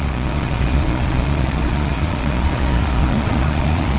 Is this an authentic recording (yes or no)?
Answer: no